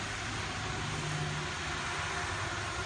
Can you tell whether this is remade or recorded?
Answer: recorded